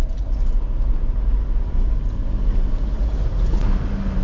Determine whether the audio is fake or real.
real